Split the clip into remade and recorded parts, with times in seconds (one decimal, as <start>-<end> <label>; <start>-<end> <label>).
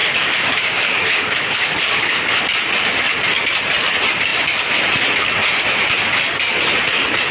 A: 0.0-2.4 remade; 2.4-7.3 recorded